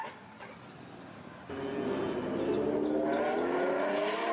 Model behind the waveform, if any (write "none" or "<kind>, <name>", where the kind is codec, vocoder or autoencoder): none